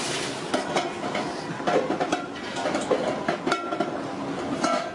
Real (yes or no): yes